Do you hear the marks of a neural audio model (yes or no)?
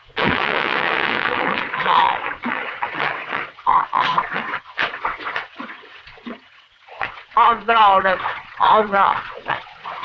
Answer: yes